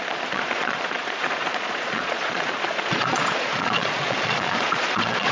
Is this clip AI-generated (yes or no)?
yes